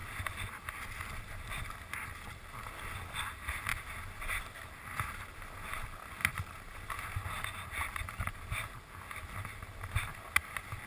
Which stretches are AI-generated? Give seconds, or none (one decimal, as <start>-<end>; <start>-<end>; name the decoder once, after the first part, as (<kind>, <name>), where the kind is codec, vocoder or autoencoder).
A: none